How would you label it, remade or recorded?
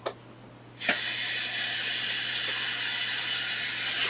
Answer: recorded